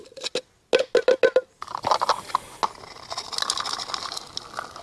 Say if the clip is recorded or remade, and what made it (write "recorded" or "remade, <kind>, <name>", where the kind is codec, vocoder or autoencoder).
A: recorded